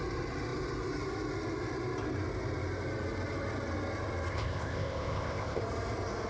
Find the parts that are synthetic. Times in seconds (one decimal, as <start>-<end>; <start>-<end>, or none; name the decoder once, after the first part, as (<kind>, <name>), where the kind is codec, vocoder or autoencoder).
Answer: 4.3-5.6 (codec, ZipCodec)